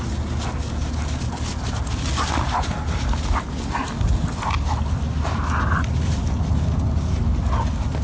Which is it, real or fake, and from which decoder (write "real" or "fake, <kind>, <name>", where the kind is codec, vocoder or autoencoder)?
real